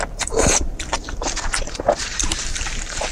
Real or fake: fake